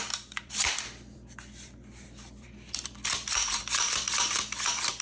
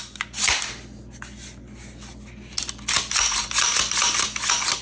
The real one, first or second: second